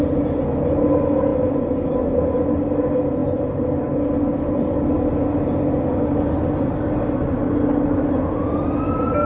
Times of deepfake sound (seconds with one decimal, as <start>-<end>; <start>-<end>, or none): none

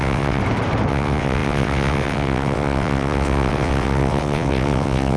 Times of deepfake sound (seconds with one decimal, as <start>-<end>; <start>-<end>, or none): 0.0-0.4; 0.9-5.2

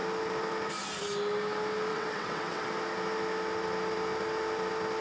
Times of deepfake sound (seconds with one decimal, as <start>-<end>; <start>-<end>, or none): 1.9-2.7

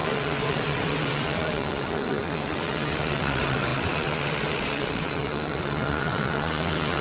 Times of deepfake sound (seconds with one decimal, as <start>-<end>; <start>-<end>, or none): 0.0-7.0